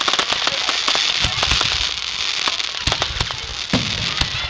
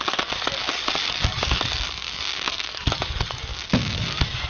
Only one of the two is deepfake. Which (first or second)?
second